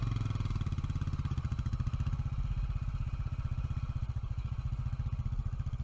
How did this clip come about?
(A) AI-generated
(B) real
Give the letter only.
B